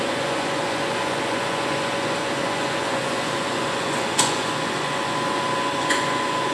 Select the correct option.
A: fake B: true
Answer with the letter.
A